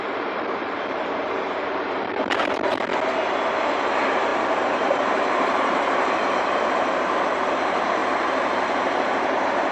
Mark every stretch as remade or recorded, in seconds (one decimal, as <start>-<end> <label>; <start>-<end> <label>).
0.0-2.9 remade; 2.9-3.8 recorded; 3.8-9.7 remade